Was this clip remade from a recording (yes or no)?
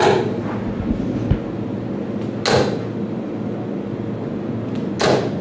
no